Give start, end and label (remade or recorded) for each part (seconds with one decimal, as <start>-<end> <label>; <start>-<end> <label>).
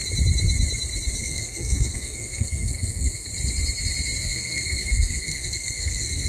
0.0-1.2 recorded; 1.2-3.3 remade; 3.3-4.2 recorded; 4.2-6.3 remade